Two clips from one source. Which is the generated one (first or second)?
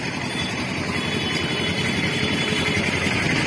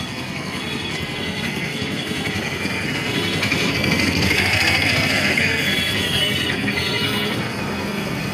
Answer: second